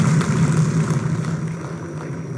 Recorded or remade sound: recorded